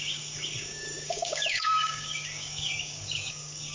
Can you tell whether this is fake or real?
fake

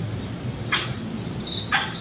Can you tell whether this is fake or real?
real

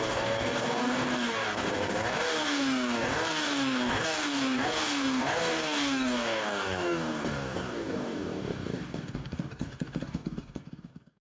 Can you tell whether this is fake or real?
fake